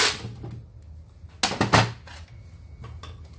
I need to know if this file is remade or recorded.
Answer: recorded